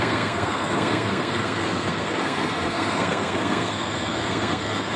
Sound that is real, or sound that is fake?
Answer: fake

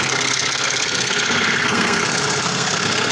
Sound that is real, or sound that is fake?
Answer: fake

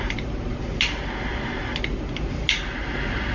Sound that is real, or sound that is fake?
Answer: real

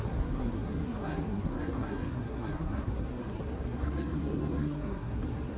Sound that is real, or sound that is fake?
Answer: fake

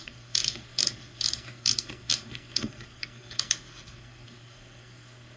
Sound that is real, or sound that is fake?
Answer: fake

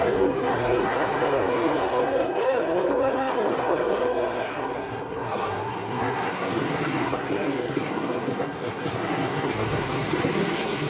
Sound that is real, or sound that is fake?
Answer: fake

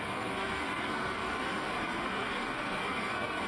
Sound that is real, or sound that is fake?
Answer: fake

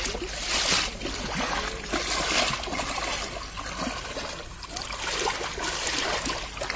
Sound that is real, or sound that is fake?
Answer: real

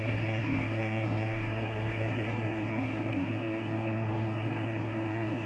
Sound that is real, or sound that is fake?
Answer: fake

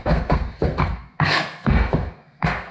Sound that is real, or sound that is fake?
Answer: fake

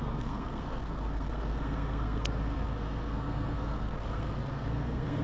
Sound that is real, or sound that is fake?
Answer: fake